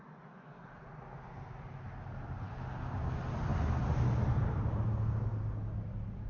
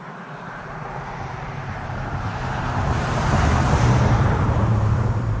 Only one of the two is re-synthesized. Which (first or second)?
second